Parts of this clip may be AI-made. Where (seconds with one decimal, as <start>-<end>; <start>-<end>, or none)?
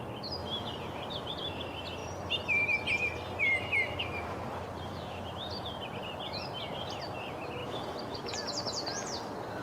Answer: 0.4-1.3; 2.0-5.5; 7.6-9.6